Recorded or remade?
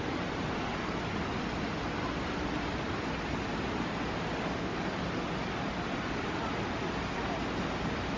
recorded